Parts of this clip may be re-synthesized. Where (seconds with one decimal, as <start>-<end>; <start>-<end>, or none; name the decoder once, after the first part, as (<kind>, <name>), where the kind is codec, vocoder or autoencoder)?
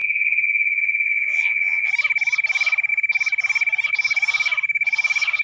0.0-1.9 (vocoder, Vocos)